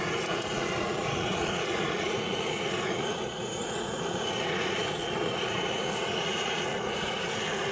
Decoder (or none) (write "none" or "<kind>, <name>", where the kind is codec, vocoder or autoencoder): vocoder, Vocos